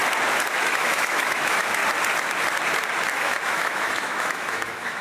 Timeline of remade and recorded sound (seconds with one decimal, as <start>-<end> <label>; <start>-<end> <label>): 0.0-0.6 recorded; 0.6-1.8 remade; 1.8-3.2 recorded; 3.2-5.0 remade